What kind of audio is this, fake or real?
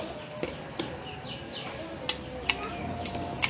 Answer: real